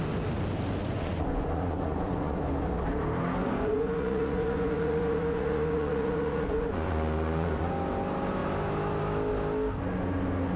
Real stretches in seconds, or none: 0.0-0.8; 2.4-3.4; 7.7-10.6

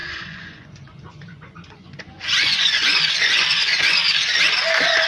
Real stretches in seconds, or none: 4.0-5.1

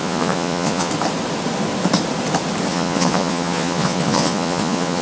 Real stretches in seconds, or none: 0.9-2.7

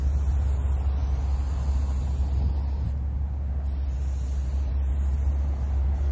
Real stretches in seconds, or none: 0.0-6.1

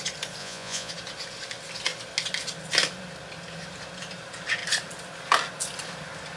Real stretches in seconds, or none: 0.0-0.4; 0.9-6.4

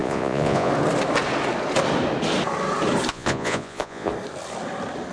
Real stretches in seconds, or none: 0.7-3.1; 4.1-5.1

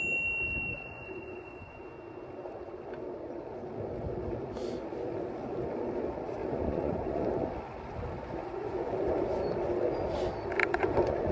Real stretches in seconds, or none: 0.0-0.7; 1.8-6.4; 7.2-8.4; 8.9-10.6